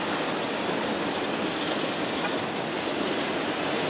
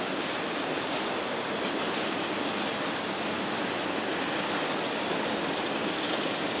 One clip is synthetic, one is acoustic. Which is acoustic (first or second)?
first